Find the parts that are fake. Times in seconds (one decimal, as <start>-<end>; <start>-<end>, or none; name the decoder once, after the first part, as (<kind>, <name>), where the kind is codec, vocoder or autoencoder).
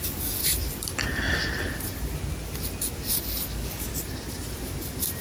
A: 0.0-0.4 (codec, DAC); 3.5-3.9